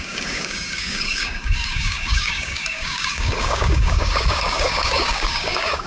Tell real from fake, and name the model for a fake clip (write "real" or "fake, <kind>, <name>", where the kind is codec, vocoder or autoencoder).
fake, codec, DAC